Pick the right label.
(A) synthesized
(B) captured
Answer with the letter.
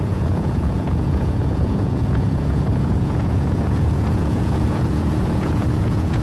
A